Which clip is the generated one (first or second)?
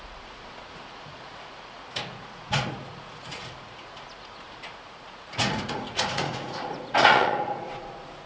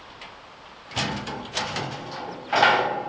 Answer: first